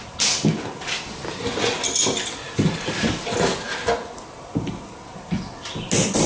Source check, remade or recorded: recorded